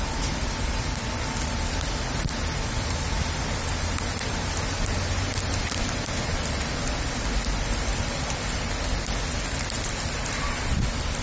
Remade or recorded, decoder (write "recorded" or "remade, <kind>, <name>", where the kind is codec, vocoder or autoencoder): recorded